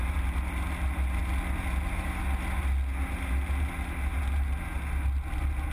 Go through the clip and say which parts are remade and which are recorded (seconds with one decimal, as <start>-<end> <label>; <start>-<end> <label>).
0.0-5.7 recorded